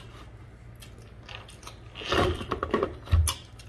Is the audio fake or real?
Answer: real